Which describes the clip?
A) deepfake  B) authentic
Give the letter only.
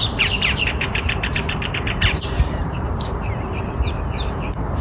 A